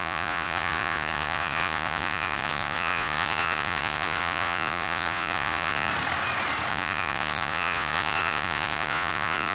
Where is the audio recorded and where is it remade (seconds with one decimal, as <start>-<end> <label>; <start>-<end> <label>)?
0.0-5.9 remade; 5.9-6.7 recorded; 6.7-9.5 remade